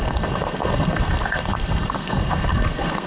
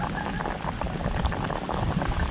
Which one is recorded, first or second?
second